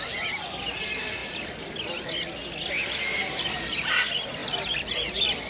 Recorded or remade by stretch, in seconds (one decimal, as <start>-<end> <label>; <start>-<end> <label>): 0.0-5.5 recorded